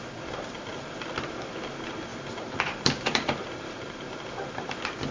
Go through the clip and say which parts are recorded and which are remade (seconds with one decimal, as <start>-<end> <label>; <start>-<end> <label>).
0.0-0.7 recorded; 0.7-1.5 remade; 1.5-2.1 recorded; 2.1-3.4 remade; 3.4-5.1 recorded